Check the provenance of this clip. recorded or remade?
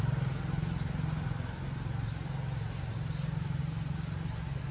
recorded